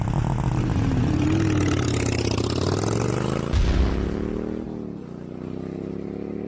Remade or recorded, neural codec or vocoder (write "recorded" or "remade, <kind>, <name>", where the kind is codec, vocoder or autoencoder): recorded